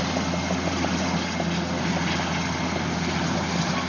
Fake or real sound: real